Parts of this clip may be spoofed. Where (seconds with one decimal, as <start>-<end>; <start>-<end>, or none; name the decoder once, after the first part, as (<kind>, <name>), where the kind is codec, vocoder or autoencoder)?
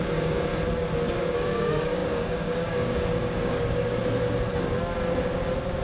0.0-0.5 (codec, DAC); 1.1-4.0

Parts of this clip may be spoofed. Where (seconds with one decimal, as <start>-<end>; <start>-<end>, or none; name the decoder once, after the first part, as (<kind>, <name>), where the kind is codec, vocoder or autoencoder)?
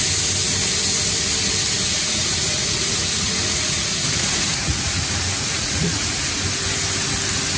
1.9-6.3 (vocoder, Vocos)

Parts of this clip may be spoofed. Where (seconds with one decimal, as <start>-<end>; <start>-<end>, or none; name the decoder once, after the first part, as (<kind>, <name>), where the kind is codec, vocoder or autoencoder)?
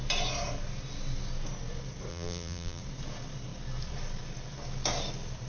2.1-2.8 (vocoder, BigVGAN v2)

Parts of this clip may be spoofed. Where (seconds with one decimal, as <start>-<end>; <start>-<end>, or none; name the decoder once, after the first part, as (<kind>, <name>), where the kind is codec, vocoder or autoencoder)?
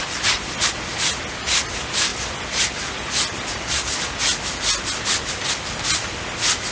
none